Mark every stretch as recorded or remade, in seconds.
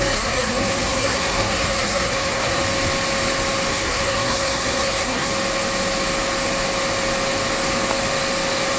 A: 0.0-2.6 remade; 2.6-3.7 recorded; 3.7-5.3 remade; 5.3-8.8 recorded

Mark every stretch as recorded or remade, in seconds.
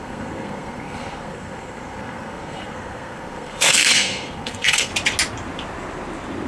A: 0.0-4.9 remade; 4.9-6.5 recorded